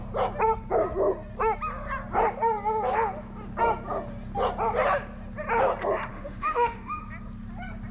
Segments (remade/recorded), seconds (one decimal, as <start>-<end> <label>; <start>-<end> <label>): 0.0-6.1 recorded; 6.1-7.0 remade; 7.0-7.9 recorded